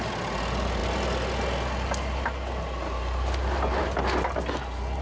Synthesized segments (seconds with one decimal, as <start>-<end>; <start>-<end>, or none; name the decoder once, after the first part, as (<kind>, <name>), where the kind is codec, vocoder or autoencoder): none